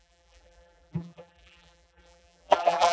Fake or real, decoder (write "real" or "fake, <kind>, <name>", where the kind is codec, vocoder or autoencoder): fake, vocoder, BigVGAN v2